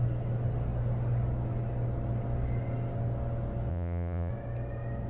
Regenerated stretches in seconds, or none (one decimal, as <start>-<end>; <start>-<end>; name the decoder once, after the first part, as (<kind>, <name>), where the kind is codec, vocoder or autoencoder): 3.7-4.3 (vocoder, Vocos)

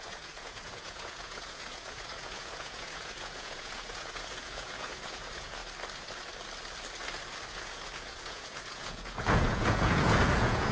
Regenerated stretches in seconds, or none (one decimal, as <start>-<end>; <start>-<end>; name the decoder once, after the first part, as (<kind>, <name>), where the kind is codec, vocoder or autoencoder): 0.0-5.6 (vocoder, Vocos); 7.5-10.7

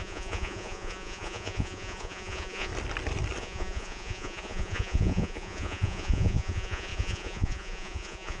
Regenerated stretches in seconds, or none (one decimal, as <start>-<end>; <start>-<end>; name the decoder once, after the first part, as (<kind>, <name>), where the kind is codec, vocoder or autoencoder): 0.0-2.7 (vocoder, Vocos); 3.4-8.4

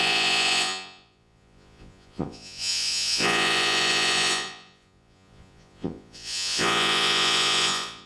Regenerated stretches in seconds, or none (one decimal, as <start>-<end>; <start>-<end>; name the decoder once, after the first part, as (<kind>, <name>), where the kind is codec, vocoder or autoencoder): 0.0-8.1 (vocoder, Vocos)

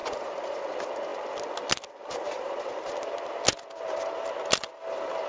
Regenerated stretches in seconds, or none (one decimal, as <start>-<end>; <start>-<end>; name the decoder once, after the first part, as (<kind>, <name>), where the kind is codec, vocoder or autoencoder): 0.0-0.6 (vocoder, Vocos)